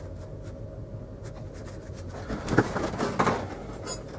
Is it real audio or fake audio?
real